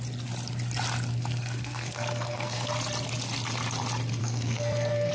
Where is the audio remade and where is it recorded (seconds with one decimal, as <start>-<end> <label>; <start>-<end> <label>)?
0.0-1.1 recorded; 1.1-2.7 remade; 2.7-4.2 recorded; 4.2-5.1 remade